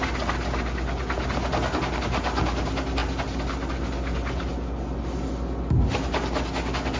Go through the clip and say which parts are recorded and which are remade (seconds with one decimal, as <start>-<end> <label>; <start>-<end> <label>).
0.0-7.0 recorded